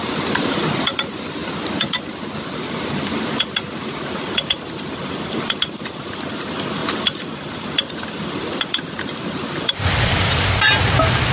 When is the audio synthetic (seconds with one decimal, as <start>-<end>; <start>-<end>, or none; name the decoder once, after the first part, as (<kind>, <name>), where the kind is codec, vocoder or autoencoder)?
none